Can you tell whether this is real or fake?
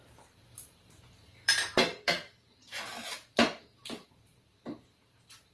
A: fake